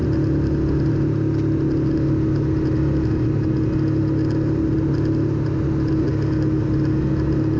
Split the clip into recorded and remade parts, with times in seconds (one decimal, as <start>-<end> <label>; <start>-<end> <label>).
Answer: 0.0-7.6 recorded

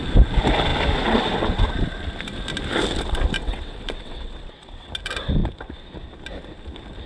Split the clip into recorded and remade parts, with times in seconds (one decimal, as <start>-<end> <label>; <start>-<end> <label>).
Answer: 0.0-3.4 recorded; 3.4-4.9 remade; 4.9-7.1 recorded

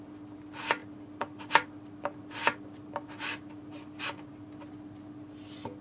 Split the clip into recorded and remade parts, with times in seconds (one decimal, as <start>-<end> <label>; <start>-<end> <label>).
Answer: 0.0-5.8 recorded

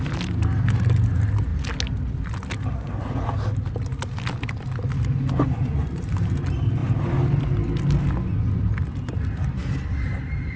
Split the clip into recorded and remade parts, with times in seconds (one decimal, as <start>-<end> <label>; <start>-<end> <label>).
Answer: 0.0-10.6 recorded

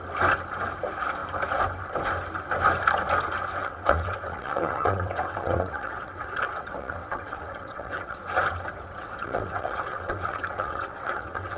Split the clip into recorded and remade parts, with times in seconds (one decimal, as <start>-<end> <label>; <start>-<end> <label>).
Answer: 0.0-3.6 recorded; 3.6-8.2 remade; 8.2-9.0 recorded; 9.0-11.6 remade